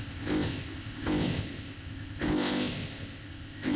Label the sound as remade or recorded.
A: remade